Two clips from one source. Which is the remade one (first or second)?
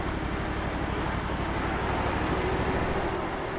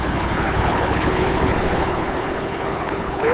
second